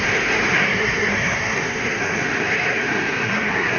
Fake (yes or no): yes